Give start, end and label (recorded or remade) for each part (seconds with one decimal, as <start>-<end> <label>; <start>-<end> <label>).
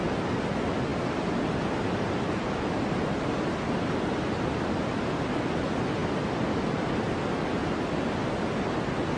0.0-9.2 recorded